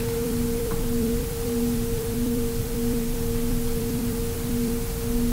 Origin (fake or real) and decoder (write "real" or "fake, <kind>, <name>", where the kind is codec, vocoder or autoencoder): fake, vocoder, BigVGAN v2